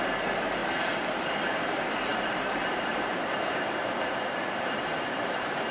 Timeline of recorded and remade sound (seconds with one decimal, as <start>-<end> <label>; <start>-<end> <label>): 0.0-2.1 recorded; 2.1-5.7 remade